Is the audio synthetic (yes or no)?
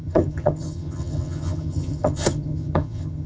yes